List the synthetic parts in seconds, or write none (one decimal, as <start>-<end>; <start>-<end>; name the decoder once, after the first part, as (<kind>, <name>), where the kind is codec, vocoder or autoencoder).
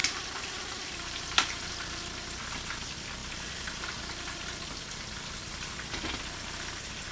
0.0-1.7 (vocoder, BigVGAN v2); 3.2-4.6